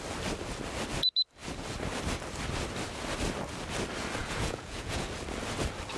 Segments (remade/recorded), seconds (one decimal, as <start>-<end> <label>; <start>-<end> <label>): 0.0-4.2 recorded; 4.2-5.1 remade; 5.1-6.0 recorded